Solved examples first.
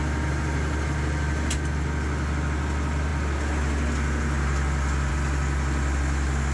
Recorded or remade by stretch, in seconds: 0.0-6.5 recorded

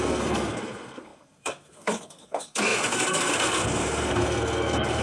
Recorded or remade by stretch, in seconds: 0.0-5.0 remade

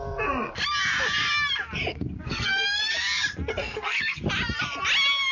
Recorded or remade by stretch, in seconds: 0.0-1.9 recorded; 1.9-2.8 remade; 2.8-3.5 recorded; 3.5-4.2 remade; 4.2-5.3 recorded

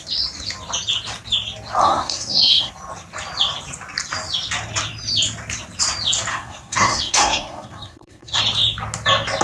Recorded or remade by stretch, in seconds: 0.0-1.8 recorded; 1.8-2.7 remade; 2.7-6.3 recorded; 6.3-8.4 remade; 8.4-9.4 recorded

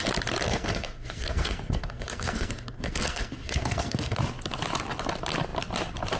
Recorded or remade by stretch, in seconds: 0.0-0.5 recorded; 0.5-4.2 remade; 4.2-6.2 recorded